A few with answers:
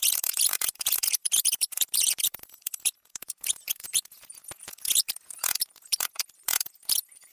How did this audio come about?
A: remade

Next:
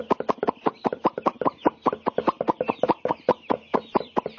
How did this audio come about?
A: recorded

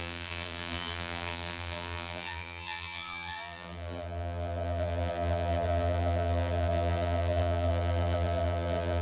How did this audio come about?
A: remade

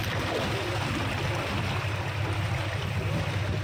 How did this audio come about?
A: recorded